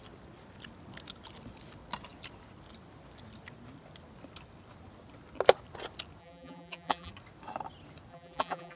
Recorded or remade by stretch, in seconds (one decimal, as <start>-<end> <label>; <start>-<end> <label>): 0.0-6.2 recorded; 6.2-7.1 remade; 7.1-8.1 recorded; 8.1-8.8 remade